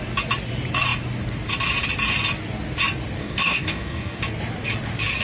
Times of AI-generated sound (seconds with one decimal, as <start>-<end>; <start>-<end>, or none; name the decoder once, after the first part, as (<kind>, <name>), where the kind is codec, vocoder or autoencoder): 3.2-4.2 (codec, DAC)